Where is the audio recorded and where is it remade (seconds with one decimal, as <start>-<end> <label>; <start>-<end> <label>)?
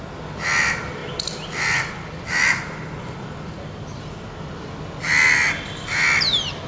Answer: 0.0-6.7 recorded